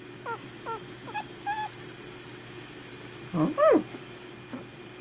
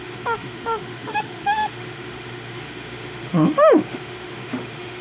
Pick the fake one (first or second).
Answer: second